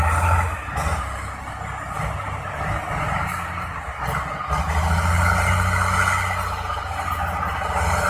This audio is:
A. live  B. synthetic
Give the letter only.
A